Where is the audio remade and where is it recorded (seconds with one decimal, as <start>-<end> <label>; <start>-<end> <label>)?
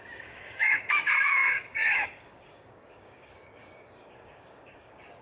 0.0-5.2 remade